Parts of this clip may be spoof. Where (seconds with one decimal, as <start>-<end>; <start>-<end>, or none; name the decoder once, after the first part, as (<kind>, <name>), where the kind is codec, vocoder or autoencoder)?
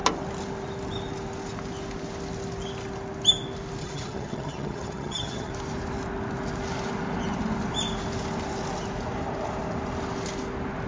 3.8-5.5 (vocoder, HiFi-GAN)